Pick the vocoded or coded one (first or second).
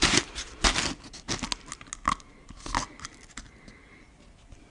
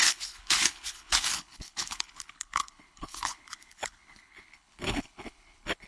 second